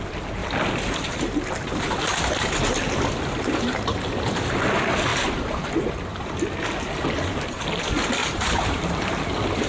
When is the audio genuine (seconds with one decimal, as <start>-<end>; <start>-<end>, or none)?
0.0-0.4; 1.5-5.1; 5.8-8.2; 9.0-9.7